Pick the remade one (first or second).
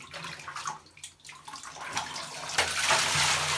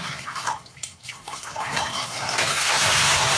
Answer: second